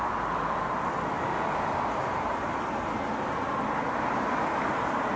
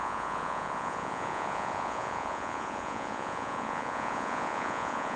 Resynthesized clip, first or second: second